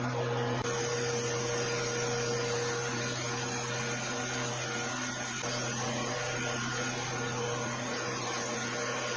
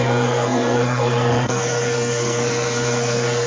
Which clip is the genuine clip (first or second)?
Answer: first